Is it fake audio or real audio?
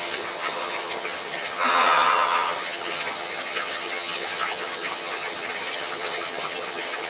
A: fake